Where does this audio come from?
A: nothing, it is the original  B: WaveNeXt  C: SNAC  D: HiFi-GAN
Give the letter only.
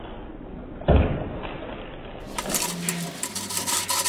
A